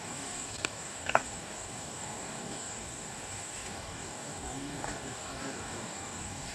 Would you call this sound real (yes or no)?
no